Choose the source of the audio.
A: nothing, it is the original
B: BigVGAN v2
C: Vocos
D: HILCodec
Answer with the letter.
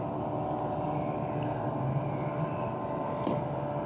A